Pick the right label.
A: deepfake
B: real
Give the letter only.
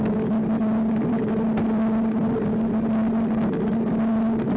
B